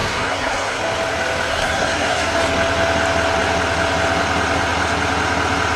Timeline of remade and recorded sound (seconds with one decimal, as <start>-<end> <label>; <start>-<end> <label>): 0.0-0.8 remade; 0.8-1.5 recorded; 1.5-2.4 remade; 2.4-5.8 recorded